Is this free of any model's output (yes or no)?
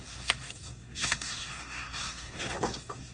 no